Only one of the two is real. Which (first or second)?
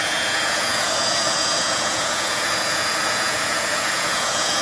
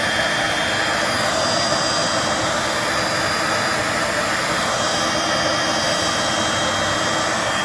second